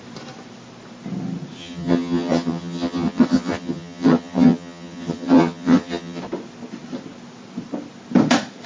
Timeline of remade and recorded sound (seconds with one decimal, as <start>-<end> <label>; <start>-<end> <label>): 0.0-1.6 recorded; 1.6-6.2 remade; 6.2-8.7 recorded